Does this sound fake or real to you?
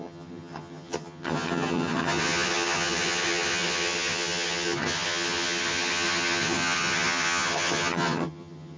fake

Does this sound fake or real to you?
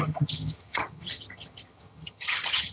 fake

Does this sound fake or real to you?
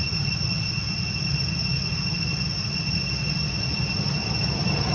real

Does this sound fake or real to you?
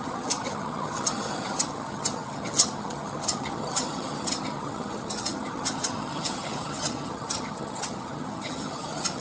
fake